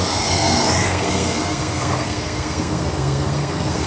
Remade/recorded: remade